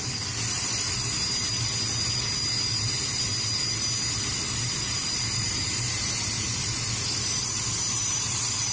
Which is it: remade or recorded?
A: recorded